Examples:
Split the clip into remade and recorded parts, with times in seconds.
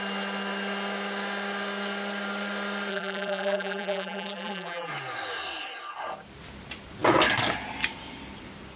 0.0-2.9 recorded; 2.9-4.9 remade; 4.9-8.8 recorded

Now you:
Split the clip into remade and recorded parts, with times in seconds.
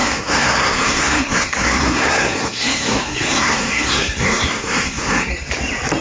0.0-5.3 remade; 5.3-6.0 recorded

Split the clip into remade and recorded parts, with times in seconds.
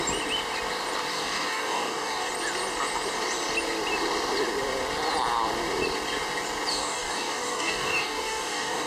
0.0-1.1 recorded; 1.1-2.3 remade; 2.3-6.7 recorded; 6.7-8.9 remade